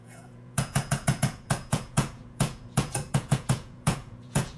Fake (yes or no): yes